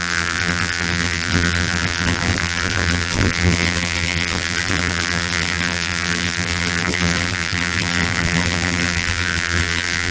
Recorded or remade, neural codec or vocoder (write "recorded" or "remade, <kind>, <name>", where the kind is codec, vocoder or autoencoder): remade, vocoder, BigVGAN v2